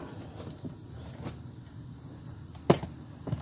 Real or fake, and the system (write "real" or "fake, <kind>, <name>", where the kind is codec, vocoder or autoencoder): real